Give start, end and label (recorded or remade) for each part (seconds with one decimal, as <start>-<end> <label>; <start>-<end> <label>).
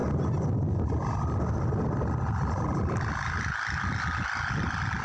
0.0-5.0 recorded